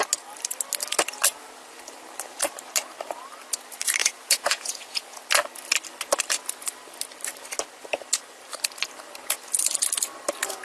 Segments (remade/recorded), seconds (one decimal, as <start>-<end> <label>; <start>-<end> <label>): 0.0-4.0 recorded; 4.0-5.2 remade; 5.2-10.6 recorded